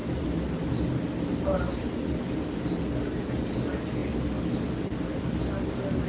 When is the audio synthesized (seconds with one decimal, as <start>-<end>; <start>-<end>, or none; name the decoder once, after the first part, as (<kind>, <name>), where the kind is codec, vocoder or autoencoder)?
none